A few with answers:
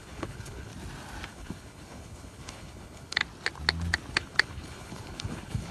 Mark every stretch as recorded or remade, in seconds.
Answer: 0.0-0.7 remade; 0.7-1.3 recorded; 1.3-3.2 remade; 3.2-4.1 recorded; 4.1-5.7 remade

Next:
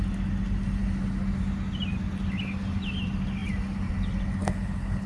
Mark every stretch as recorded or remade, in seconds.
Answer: 0.0-4.4 recorded; 4.4-5.1 remade

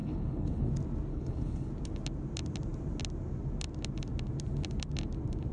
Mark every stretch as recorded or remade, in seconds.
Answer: 0.0-0.7 remade; 0.7-1.1 recorded; 1.1-1.7 remade; 1.7-5.5 recorded

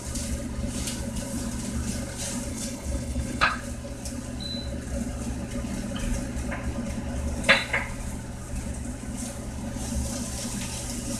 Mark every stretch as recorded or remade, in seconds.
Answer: 0.0-2.5 recorded; 2.5-3.6 remade; 3.6-11.2 recorded

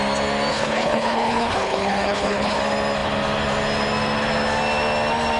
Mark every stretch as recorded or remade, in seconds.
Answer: 0.0-0.5 recorded; 0.5-2.6 remade; 2.6-5.4 recorded

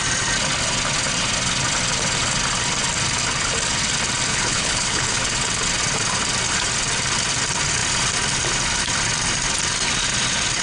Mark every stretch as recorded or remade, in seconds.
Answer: 0.0-4.3 recorded; 4.3-5.2 remade; 5.2-10.6 recorded

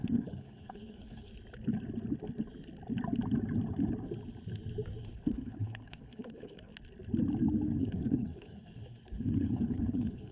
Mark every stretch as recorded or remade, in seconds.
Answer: 0.0-1.3 remade; 1.3-5.0 recorded; 5.0-6.7 remade; 6.7-7.8 recorded; 7.8-10.3 remade

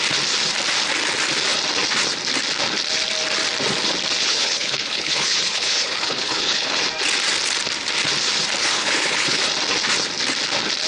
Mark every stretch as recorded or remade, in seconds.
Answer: 0.0-4.2 recorded; 4.2-6.8 remade; 6.8-8.6 recorded; 8.6-9.4 remade; 9.4-10.9 recorded